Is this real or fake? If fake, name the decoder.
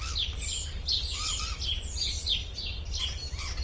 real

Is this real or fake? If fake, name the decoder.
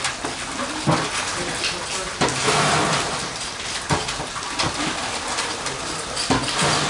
real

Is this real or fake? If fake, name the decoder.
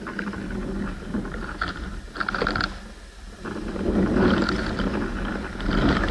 real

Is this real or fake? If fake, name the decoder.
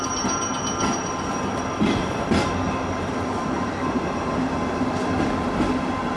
real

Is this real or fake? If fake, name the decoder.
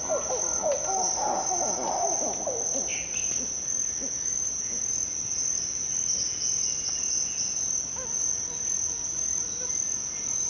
real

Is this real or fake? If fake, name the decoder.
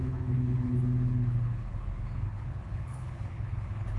fake, codec, HILCodec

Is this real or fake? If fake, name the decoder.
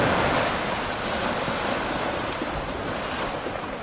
real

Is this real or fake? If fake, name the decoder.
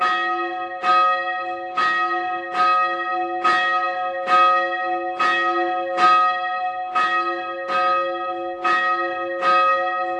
real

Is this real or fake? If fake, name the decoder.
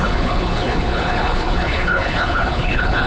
fake, codec, HILCodec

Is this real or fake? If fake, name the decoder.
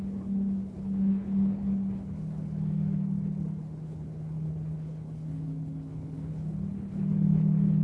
fake, codec, HILCodec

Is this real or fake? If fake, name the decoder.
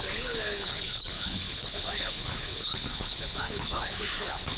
fake, codec, HILCodec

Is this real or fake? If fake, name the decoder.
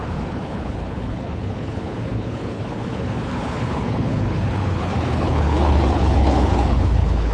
fake, codec, HILCodec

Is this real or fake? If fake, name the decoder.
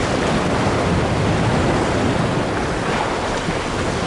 real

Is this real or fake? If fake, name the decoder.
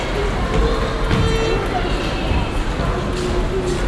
real